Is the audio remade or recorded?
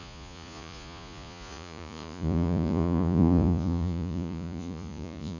remade